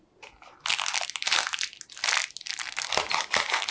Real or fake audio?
real